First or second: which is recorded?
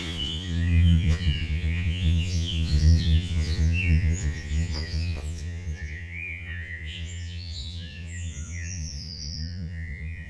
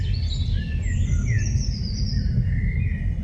second